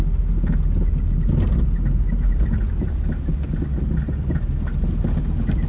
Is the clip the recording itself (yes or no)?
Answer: yes